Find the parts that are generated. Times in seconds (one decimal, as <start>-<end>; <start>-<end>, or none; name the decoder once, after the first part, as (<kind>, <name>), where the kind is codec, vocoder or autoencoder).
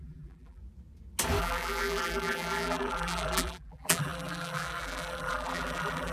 0.0-0.6 (vocoder, BigVGAN v2); 1.4-6.1